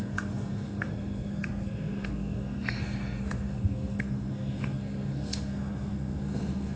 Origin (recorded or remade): remade